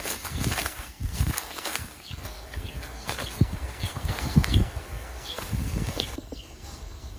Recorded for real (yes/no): no